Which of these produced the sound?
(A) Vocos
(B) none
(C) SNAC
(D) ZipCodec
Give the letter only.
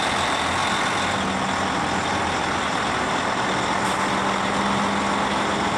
B